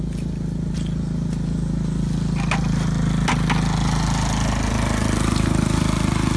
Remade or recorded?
recorded